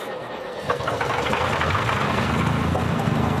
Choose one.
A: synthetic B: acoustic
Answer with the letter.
A